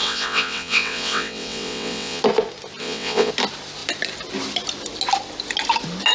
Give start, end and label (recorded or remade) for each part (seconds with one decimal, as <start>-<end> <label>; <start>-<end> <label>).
0.0-2.2 remade; 2.2-2.8 recorded; 2.8-3.3 remade; 3.3-6.1 recorded